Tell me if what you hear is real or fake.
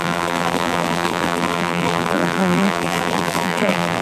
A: fake